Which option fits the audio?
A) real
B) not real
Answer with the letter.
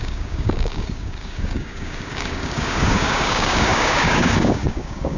B